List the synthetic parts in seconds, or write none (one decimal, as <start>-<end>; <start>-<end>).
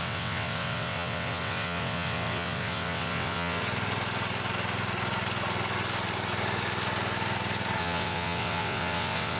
0.0-3.6; 7.8-9.4